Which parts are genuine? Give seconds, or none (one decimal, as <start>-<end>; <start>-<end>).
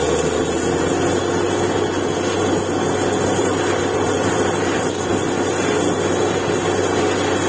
0.0-3.4; 5.1-7.5